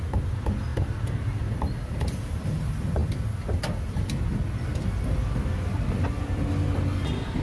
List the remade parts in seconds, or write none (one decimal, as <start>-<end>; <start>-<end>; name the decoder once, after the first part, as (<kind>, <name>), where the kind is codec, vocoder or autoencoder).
none